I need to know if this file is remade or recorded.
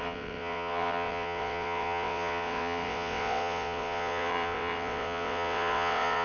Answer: remade